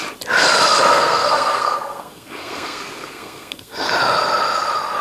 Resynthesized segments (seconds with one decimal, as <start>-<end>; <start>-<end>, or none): 0.9-3.9